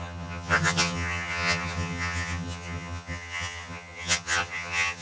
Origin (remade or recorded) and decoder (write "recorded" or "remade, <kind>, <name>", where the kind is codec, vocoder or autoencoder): remade, vocoder, HiFi-GAN